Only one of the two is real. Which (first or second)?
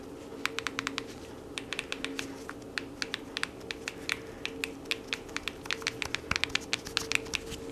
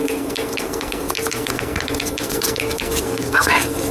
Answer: first